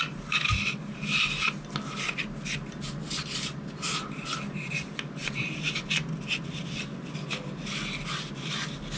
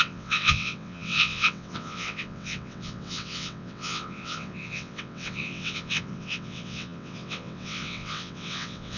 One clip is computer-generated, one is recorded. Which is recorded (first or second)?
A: first